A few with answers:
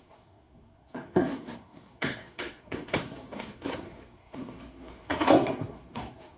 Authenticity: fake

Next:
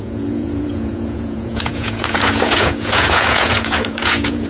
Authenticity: fake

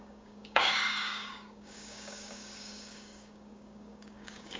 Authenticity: fake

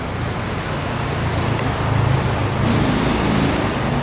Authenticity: real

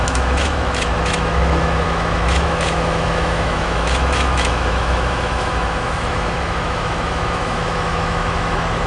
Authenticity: fake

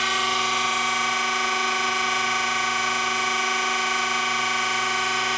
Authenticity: real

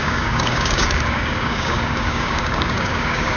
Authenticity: fake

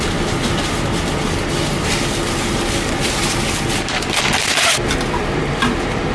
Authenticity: fake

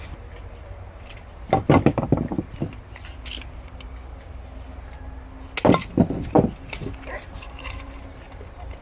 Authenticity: real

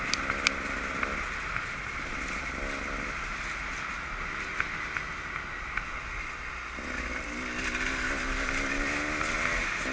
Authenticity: real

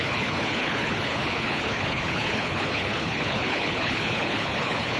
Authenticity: fake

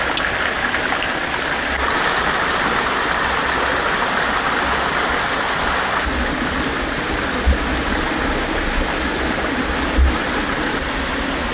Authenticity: real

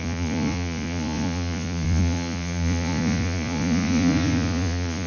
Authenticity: fake